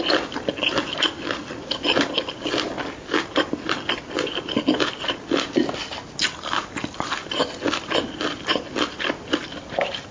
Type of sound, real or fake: real